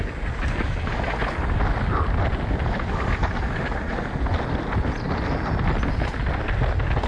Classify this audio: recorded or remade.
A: recorded